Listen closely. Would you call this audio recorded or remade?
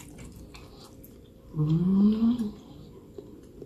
recorded